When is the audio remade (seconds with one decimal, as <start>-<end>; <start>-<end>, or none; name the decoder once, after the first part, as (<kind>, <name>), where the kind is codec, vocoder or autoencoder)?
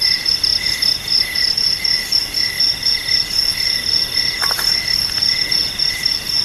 none